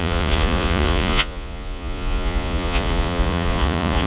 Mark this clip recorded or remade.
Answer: remade